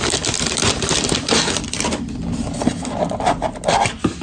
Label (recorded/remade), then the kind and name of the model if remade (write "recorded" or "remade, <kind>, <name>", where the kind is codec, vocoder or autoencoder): recorded